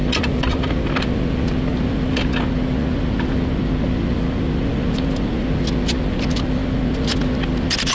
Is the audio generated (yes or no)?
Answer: no